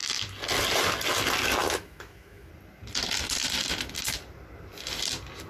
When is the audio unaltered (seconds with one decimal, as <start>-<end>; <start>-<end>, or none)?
0.0-1.6; 2.5-5.5